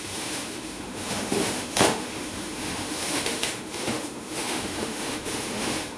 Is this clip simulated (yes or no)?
yes